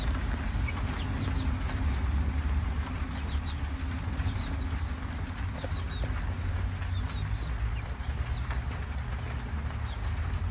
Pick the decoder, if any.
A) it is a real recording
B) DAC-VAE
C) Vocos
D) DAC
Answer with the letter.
A